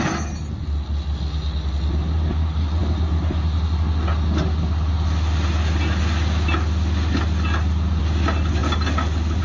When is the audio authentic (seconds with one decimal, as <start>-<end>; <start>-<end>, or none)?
0.0-9.4

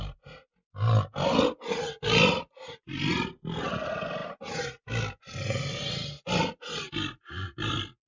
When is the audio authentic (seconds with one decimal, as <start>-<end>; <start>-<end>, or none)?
0.0-8.1

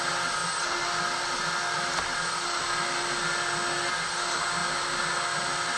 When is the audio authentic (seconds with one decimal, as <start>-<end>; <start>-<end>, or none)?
0.0-5.8